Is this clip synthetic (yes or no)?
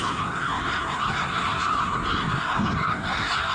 yes